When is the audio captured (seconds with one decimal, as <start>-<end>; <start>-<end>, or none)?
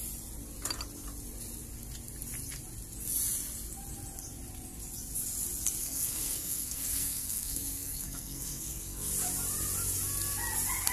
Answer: 0.0-5.8; 9.1-10.9